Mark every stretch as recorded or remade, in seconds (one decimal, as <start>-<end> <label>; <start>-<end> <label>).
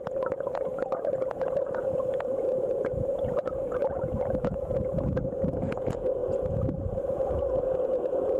0.0-8.4 remade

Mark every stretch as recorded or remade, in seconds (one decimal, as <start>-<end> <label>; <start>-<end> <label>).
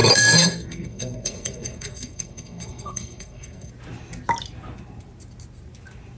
0.0-3.7 remade; 3.7-6.2 recorded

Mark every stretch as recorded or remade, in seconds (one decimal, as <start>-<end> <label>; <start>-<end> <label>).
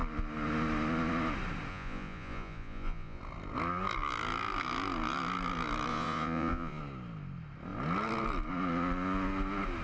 0.0-1.7 recorded; 1.7-3.2 remade; 3.2-5.9 recorded; 5.9-6.8 remade; 6.8-9.8 recorded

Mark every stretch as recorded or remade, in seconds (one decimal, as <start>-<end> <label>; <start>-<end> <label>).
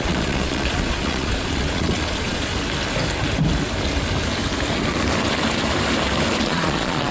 0.0-2.5 remade; 2.5-6.4 recorded; 6.4-7.1 remade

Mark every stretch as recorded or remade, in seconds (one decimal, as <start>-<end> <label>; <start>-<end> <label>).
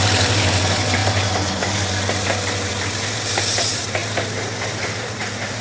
0.0-5.6 remade